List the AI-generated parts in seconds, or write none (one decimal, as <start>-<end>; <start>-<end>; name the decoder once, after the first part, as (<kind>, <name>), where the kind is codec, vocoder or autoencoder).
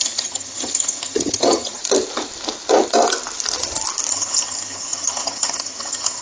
0.0-1.8 (vocoder, HiFi-GAN); 4.1-6.2